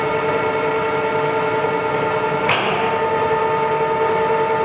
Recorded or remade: remade